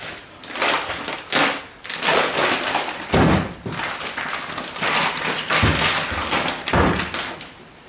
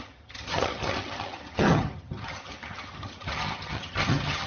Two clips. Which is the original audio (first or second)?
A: first